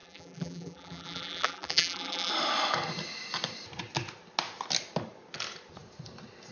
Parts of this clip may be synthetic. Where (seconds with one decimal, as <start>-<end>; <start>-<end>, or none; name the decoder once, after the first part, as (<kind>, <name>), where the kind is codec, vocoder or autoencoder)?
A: 0.0-2.3 (vocoder, BigVGAN v2)